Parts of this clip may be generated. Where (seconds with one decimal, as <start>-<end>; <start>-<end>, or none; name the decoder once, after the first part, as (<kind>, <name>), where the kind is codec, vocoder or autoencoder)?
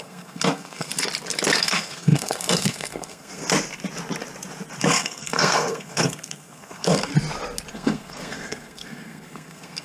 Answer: 0.0-0.9 (codec, SNAC); 1.6-3.4; 4.8-7.1; 7.7-9.8